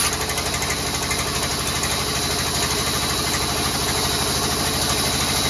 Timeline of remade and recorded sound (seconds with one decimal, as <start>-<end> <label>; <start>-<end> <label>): 0.0-5.5 recorded